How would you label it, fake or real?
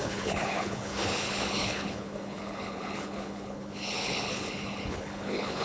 fake